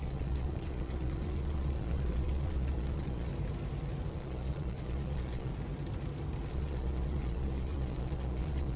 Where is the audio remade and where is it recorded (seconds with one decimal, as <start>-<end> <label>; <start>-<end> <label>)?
0.0-3.3 remade; 3.3-4.1 recorded; 4.1-5.5 remade; 5.5-6.5 recorded; 6.5-8.8 remade